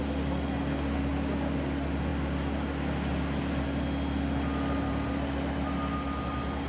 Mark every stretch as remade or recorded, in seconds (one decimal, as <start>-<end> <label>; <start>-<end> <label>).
0.0-6.7 recorded